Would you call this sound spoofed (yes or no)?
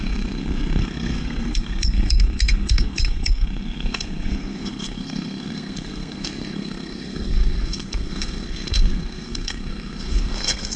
yes